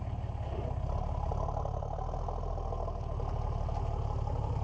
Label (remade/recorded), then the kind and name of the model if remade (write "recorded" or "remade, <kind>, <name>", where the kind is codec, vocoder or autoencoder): recorded